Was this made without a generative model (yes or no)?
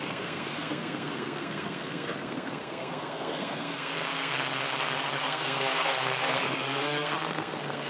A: no